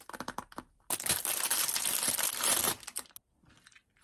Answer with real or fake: real